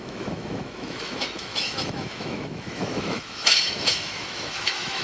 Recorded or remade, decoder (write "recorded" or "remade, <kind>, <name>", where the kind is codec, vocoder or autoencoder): remade, autoencoder, DAC-VAE